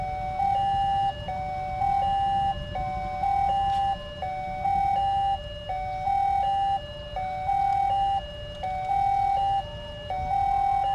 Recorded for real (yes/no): yes